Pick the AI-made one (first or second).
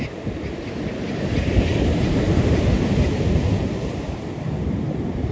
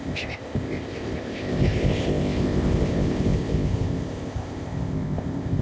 second